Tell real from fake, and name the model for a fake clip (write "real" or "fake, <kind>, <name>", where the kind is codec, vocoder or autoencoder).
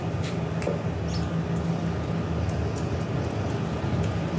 real